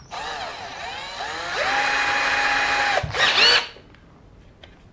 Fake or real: real